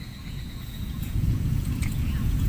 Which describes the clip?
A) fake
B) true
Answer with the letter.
A